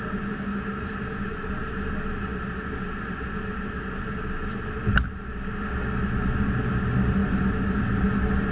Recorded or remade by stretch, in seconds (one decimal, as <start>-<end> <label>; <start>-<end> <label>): 0.0-8.5 recorded